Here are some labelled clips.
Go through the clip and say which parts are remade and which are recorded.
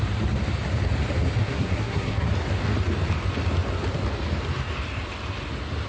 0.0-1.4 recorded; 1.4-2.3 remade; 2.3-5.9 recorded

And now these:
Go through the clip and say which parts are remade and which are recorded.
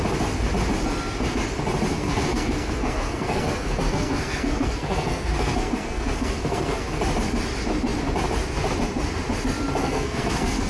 0.0-1.9 recorded; 1.9-7.0 remade; 7.0-9.8 recorded; 9.8-10.7 remade